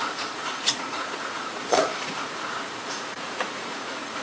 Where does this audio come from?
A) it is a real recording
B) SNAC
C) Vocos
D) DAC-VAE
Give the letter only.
C